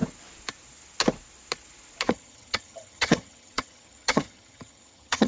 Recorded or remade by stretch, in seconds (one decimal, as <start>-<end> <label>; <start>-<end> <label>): 0.0-2.1 recorded; 2.1-5.3 remade